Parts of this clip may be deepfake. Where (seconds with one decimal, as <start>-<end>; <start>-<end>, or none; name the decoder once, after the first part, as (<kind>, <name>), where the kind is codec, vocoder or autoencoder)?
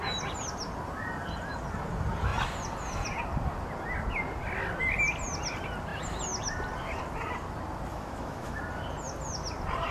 7.9-8.6 (autoencoder, DAC-VAE)